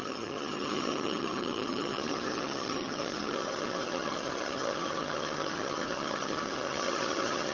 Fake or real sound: fake